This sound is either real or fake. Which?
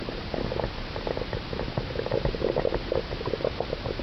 real